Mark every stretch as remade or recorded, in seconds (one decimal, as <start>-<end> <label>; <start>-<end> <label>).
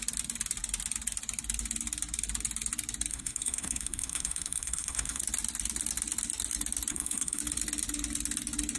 0.0-3.1 recorded; 3.1-5.2 remade; 5.2-6.9 recorded; 6.9-7.4 remade; 7.4-8.8 recorded